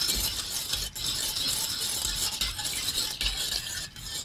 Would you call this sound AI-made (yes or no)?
no